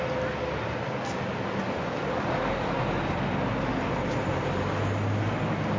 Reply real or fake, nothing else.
real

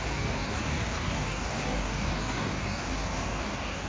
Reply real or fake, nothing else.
fake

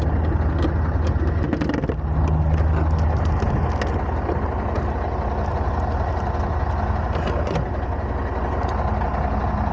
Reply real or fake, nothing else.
real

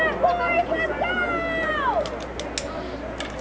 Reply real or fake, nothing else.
real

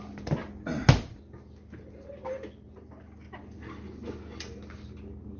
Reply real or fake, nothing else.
real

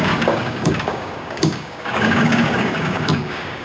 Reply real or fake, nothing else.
fake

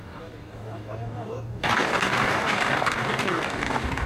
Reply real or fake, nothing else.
fake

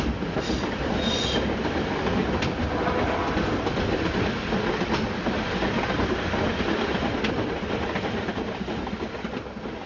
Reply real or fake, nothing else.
real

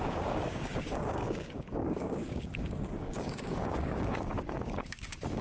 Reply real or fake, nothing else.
fake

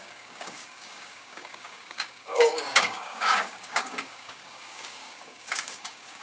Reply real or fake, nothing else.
fake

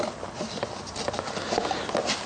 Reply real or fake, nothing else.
real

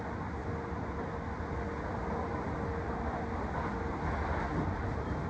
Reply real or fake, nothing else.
real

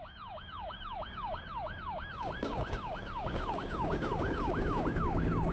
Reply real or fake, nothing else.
fake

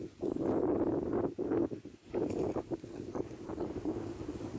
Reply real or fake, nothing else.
real